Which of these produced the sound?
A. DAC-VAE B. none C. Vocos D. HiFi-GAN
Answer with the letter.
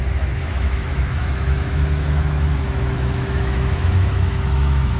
A